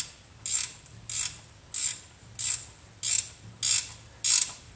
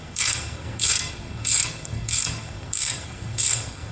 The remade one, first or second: second